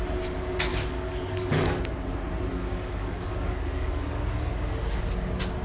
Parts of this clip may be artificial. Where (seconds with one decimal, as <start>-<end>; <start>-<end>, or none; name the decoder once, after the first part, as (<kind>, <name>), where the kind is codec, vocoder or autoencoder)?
0.7-1.8 (codec, DAC); 2.5-5.1